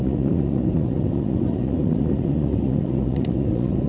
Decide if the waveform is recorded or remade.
remade